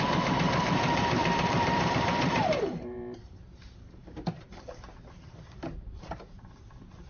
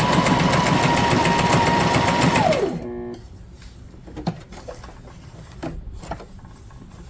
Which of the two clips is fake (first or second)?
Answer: first